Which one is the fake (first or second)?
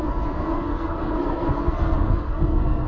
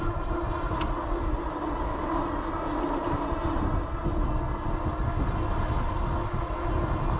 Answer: first